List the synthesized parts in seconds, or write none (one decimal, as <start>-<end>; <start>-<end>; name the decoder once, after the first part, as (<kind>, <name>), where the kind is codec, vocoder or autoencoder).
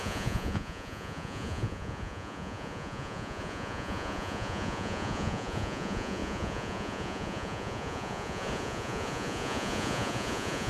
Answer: 0.0-10.7 (vocoder, Vocos)